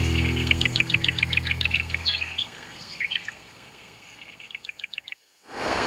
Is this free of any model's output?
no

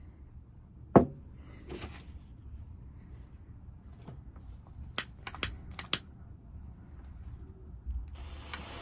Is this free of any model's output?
yes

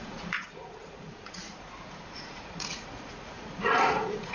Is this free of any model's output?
no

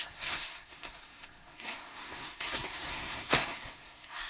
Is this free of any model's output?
no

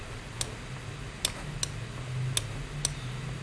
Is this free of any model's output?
yes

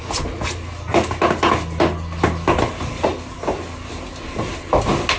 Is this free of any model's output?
yes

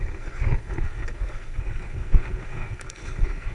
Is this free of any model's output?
no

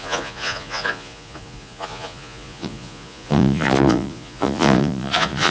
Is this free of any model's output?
no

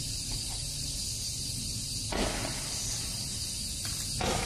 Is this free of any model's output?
yes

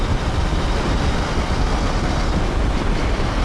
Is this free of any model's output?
yes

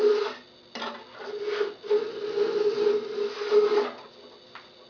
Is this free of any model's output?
yes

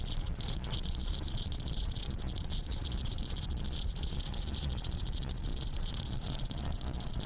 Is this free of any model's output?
no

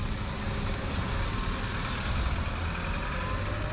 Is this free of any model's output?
yes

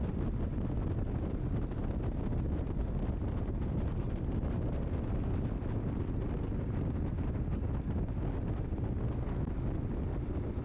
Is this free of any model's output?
yes